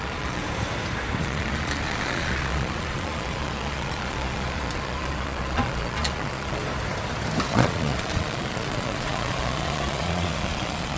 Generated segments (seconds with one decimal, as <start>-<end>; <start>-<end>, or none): 0.0-0.4; 1.2-6.6; 7.5-11.0